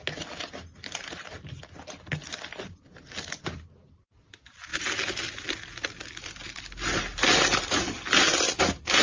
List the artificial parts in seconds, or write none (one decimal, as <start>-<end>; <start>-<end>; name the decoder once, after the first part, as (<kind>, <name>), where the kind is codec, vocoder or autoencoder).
none